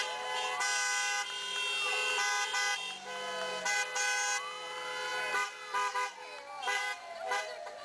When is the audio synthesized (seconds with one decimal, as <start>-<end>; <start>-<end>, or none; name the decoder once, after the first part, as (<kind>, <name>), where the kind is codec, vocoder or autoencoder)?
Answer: none